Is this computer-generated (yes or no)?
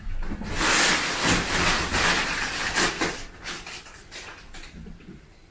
no